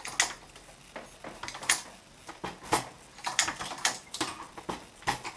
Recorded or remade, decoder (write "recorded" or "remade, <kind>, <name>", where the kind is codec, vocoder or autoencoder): recorded